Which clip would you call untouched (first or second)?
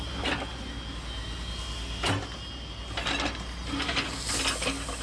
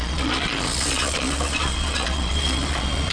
first